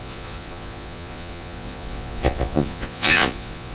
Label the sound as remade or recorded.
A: remade